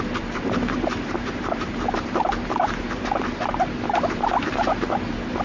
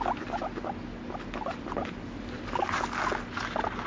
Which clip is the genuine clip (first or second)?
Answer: second